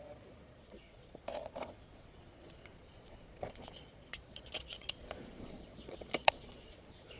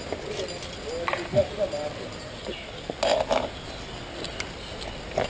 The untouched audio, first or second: second